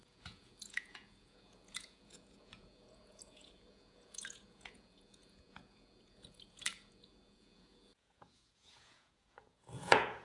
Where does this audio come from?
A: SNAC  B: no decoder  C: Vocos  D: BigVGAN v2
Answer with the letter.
C